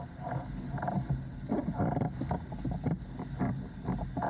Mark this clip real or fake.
real